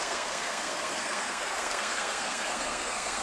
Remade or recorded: remade